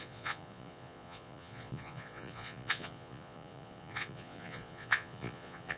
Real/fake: fake